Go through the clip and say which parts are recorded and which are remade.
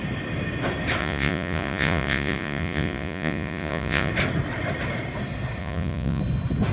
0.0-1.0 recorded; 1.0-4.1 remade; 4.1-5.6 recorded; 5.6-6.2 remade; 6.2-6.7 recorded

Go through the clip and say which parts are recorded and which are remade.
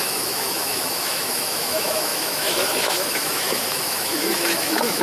0.0-5.0 remade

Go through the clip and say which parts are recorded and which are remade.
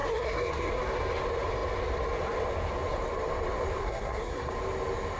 0.0-0.8 remade; 0.8-3.8 recorded; 3.8-4.5 remade; 4.5-5.2 recorded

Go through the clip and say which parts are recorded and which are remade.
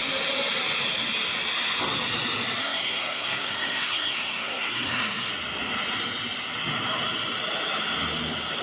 0.0-2.6 recorded; 2.6-5.3 remade; 5.3-8.6 recorded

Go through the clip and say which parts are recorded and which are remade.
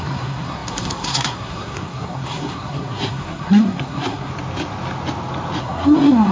0.0-4.3 remade; 4.3-5.6 recorded; 5.6-6.3 remade